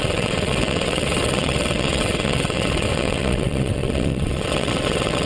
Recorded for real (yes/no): no